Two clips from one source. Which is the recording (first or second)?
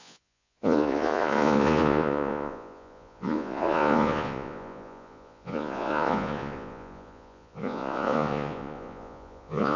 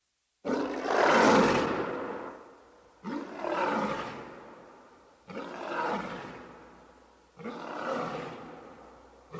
second